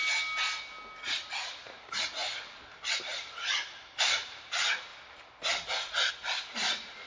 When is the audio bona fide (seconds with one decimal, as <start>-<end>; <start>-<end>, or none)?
0.0-1.8; 2.2-3.0; 4.9-6.1